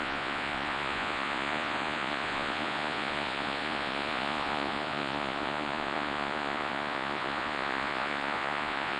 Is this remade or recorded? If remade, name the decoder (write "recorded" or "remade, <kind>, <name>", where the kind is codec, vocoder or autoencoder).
remade, vocoder, Vocos